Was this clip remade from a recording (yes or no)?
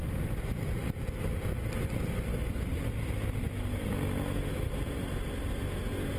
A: no